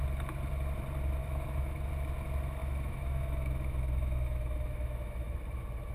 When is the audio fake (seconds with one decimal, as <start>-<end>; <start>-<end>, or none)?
1.2-1.9; 2.6-5.4